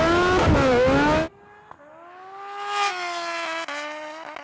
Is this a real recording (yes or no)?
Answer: yes